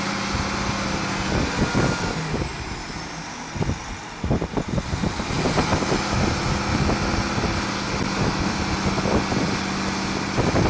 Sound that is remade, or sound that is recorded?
recorded